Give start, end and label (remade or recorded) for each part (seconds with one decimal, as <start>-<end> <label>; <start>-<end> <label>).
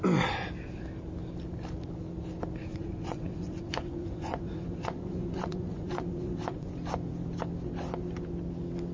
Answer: 0.0-2.7 recorded; 2.7-6.7 remade; 6.7-8.9 recorded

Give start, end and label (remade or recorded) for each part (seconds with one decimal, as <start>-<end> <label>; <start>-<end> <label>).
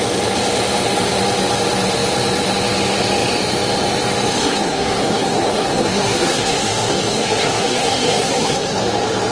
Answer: 0.0-4.4 recorded; 4.4-8.8 remade; 8.8-9.3 recorded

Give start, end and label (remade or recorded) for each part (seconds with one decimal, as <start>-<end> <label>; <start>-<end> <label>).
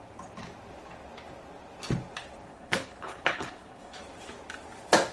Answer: 0.0-2.5 recorded; 2.5-4.0 remade; 4.0-5.1 recorded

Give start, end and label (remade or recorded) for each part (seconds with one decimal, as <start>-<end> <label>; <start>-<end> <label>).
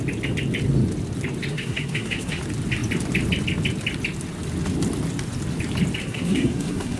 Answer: 0.0-1.5 recorded; 1.5-2.4 remade; 2.4-6.0 recorded; 6.0-7.0 remade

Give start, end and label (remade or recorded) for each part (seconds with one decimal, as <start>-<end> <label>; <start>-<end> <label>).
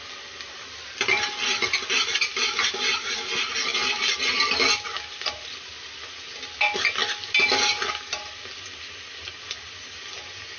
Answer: 0.0-10.6 recorded